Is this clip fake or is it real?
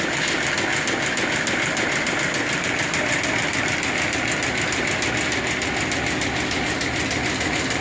real